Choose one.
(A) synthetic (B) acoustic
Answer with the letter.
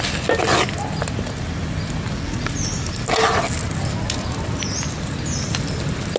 B